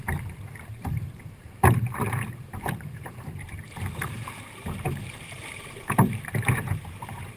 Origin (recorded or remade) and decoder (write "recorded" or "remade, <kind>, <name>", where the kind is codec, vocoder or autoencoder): remade, vocoder, BigVGAN v2